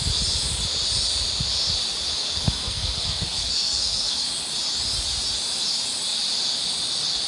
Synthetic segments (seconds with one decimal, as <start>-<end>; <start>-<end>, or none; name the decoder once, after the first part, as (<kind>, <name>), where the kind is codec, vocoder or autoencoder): 2.1-4.3 (codec, SNAC)